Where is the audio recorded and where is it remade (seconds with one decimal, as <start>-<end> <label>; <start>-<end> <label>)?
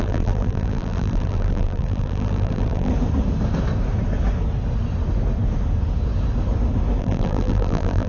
0.0-2.9 remade; 2.9-7.0 recorded; 7.0-8.1 remade